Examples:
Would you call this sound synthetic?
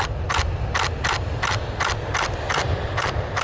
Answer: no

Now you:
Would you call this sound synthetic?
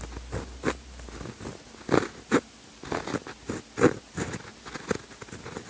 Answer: no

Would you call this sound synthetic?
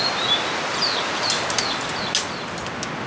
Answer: no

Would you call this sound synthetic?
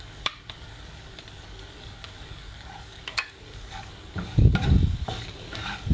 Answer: yes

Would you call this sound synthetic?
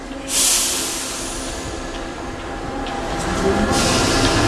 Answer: no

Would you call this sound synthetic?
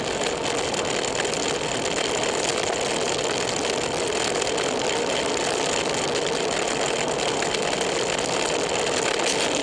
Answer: no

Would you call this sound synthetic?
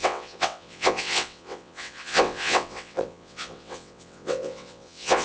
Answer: yes